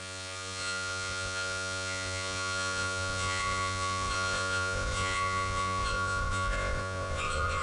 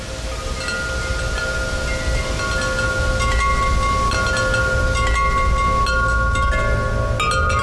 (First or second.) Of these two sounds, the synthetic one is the first